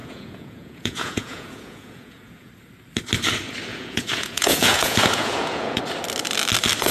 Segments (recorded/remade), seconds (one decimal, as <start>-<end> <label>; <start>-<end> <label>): 0.0-2.5 remade; 2.5-3.7 recorded; 3.7-5.8 remade; 5.8-6.9 recorded